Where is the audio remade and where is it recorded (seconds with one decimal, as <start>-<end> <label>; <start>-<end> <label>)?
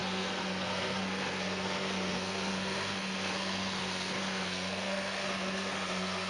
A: 0.0-6.3 remade